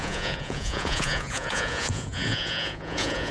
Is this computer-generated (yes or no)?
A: yes